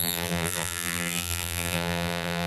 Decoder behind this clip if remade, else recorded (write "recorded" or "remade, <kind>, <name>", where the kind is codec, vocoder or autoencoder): remade, vocoder, BigVGAN v2